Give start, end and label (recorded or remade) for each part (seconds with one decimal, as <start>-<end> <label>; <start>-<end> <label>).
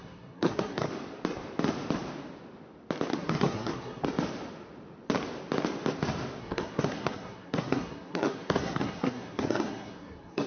0.0-0.9 remade; 0.9-3.1 recorded; 3.1-4.0 remade; 4.0-6.4 recorded; 6.4-10.5 remade